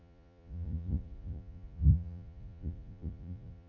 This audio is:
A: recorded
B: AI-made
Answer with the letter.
B